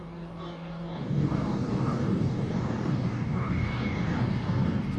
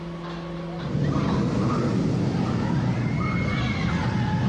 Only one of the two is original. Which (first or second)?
second